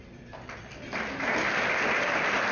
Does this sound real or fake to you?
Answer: fake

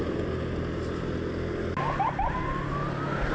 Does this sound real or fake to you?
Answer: real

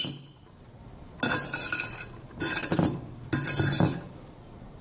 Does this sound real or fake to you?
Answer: real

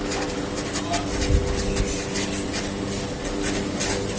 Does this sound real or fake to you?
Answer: real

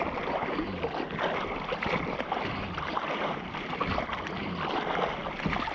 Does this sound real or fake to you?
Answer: real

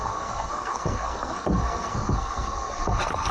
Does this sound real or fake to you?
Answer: fake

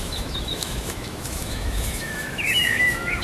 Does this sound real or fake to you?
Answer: fake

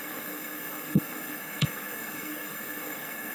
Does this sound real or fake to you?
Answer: fake